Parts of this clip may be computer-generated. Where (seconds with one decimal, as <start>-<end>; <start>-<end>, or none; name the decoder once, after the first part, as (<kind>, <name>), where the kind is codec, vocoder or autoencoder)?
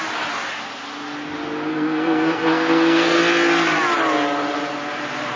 1.7-3.2 (codec, SNAC)